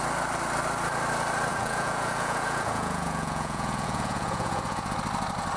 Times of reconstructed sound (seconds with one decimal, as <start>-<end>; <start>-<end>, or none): 1.5-4.9